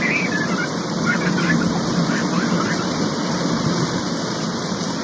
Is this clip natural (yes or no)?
yes